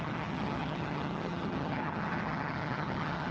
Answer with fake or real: fake